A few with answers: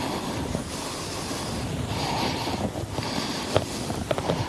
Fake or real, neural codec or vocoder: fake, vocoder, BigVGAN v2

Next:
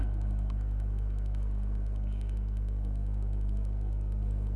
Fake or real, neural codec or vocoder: fake, codec, SNAC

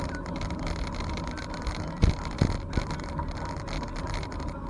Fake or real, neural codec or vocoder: real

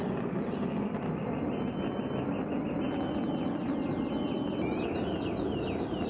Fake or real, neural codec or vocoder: real